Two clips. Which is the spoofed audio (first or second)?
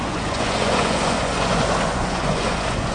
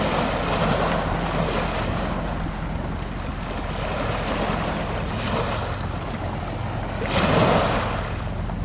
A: first